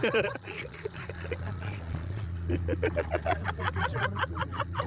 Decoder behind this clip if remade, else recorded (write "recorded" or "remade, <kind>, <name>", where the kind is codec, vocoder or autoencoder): remade, vocoder, Vocos